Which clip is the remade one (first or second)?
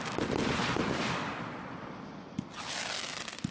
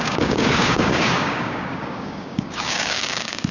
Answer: second